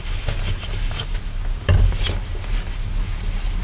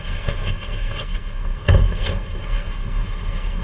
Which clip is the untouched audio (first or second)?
first